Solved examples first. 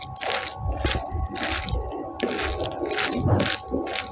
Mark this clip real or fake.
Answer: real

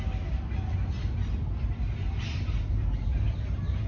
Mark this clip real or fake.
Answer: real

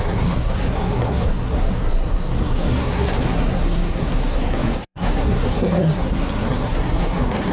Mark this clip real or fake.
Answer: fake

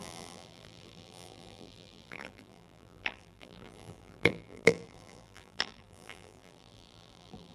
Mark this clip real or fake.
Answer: fake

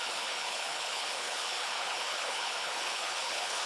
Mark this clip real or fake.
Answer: fake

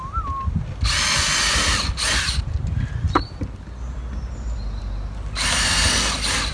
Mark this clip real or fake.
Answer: real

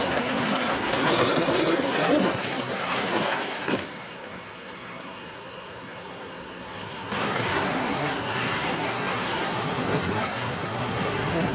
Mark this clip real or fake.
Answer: fake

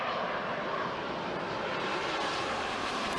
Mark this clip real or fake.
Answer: fake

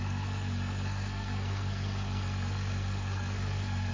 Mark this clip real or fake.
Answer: fake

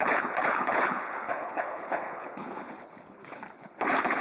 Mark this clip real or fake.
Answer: fake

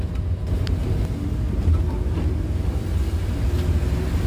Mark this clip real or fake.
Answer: real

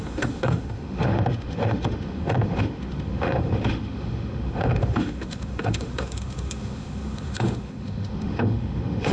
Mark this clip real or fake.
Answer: fake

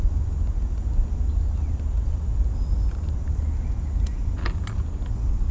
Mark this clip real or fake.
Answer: real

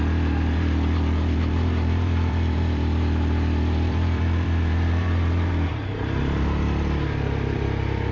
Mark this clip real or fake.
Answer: fake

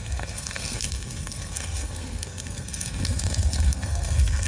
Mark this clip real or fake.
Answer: fake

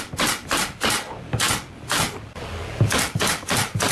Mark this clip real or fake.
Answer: real